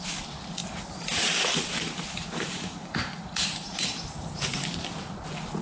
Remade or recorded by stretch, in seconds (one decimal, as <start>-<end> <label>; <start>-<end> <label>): 0.0-0.6 recorded; 0.6-4.0 remade; 4.0-5.6 recorded

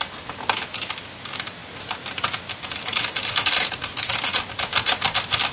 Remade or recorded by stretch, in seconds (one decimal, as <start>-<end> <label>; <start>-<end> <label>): 0.0-5.5 recorded

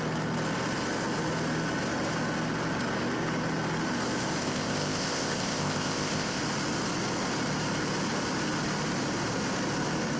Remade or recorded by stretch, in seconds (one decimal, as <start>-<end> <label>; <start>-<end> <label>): 0.0-4.4 recorded; 4.4-6.4 remade; 6.4-10.2 recorded